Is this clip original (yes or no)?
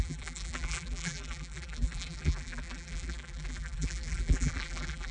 no